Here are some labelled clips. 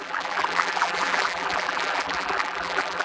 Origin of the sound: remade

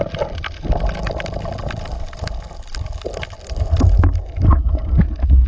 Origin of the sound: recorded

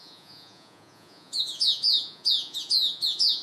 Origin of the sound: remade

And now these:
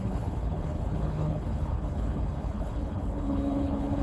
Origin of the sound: remade